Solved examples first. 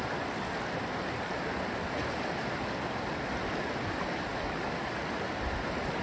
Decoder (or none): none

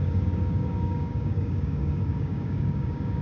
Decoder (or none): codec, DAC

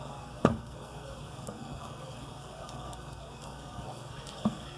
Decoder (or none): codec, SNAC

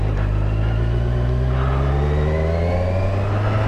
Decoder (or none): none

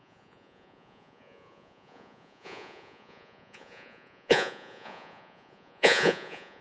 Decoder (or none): vocoder, Vocos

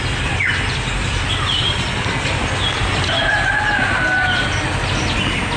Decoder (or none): none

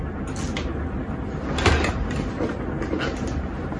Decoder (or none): none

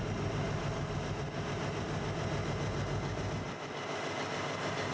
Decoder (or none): none